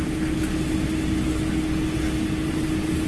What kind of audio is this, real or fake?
real